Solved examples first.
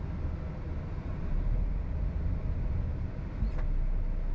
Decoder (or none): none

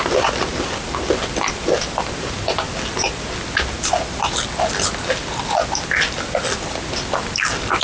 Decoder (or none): none